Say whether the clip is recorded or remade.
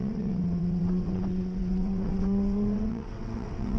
remade